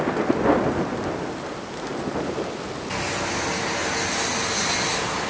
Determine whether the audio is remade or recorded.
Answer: recorded